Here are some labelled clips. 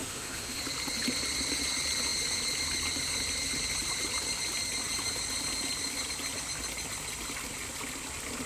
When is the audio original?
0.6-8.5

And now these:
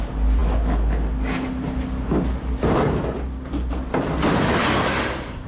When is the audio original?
0.0-5.5

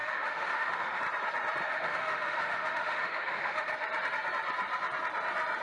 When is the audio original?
1.0-1.7; 3.7-5.6

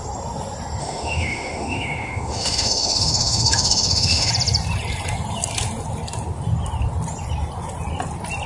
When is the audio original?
0.0-0.8; 4.3-8.5

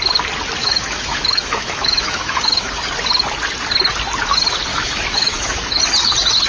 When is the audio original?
0.0-0.6; 2.7-4.7; 5.8-6.5

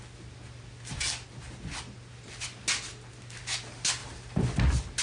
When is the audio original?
0.0-5.0

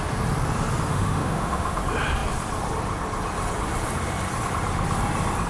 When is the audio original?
0.0-0.9; 1.8-5.5